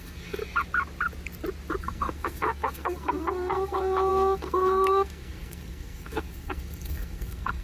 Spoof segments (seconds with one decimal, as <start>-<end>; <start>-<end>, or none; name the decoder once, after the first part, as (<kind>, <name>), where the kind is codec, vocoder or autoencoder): 0.0-0.4 (codec, SNAC); 1.8-7.6